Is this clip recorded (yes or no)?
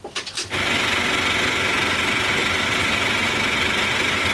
yes